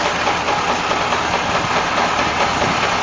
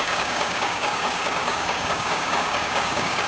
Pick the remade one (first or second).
second